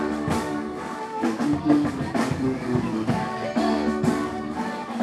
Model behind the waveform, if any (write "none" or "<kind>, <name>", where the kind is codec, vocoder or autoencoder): codec, DAC